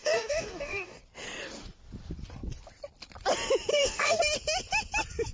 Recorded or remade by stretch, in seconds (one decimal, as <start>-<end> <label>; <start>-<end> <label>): 0.0-1.0 remade; 1.0-3.7 recorded; 3.7-4.2 remade; 4.2-5.3 recorded